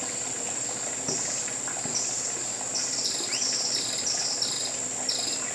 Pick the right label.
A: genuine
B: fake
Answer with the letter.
A